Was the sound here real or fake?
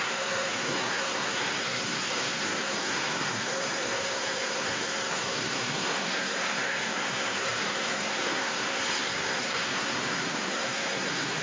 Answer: fake